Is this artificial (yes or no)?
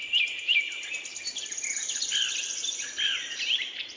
no